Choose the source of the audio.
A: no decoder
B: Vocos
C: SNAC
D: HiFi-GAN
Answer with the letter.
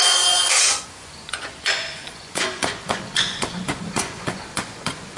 B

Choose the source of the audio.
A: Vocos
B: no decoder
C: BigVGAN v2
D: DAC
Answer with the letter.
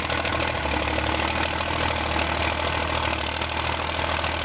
B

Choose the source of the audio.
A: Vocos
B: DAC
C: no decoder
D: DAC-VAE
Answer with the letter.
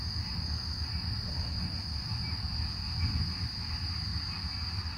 C